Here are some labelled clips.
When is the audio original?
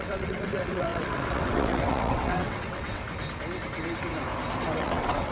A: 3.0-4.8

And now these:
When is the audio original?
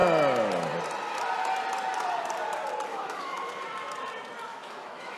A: 0.0-2.9; 3.5-4.5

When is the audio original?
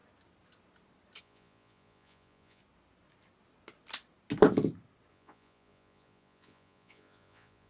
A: 0.0-1.2; 2.6-5.1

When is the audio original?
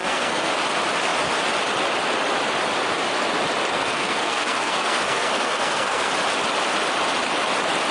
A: 0.5-3.7; 6.1-7.9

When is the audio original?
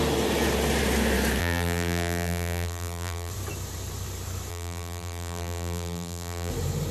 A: 0.0-1.4; 3.3-4.5; 6.5-6.9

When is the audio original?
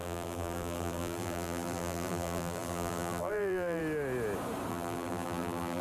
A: 3.8-4.7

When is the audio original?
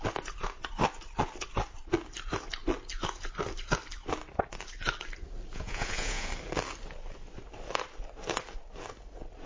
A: 0.0-5.5; 6.3-9.5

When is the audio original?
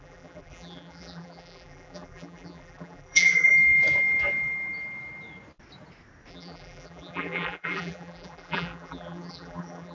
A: 3.5-6.3